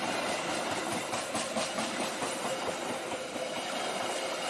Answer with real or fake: real